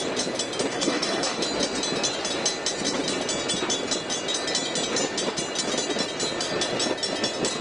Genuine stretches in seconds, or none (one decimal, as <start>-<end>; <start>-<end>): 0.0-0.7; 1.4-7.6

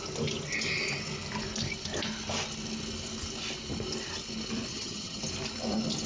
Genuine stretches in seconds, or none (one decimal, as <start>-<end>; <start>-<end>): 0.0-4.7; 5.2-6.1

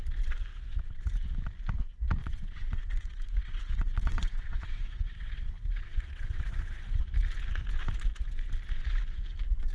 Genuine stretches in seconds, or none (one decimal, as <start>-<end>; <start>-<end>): 0.0-0.5; 1.0-2.2; 7.0-9.7

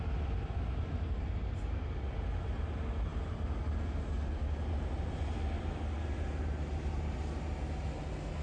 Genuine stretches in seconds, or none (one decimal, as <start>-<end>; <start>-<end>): 0.0-8.4

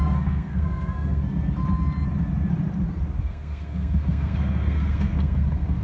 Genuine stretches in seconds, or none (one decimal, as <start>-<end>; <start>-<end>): 1.2-3.2

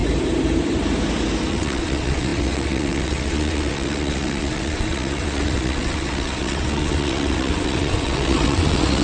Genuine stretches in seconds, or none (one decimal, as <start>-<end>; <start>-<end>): 0.0-1.5

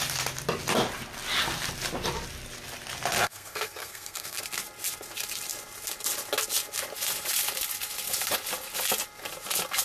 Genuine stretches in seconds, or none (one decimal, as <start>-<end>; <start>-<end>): 0.0-3.2; 4.4-9.8

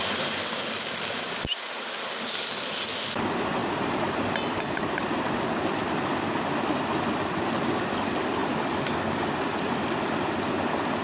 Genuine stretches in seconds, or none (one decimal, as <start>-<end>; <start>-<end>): 0.0-3.6; 5.2-11.0